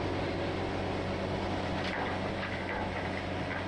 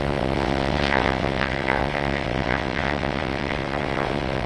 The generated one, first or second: second